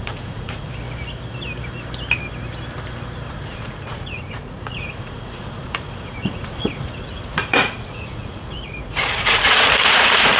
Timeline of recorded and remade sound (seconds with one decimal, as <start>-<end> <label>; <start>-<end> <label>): 0.0-0.7 remade; 0.7-3.3 recorded; 3.3-10.4 remade